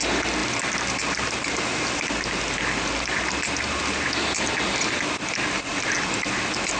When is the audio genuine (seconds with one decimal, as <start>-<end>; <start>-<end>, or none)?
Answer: 0.0-6.8